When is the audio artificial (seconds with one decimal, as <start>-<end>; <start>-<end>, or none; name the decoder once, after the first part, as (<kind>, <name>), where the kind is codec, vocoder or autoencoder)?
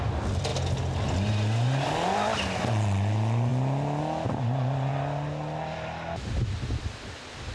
none